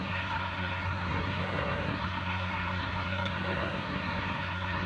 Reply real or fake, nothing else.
fake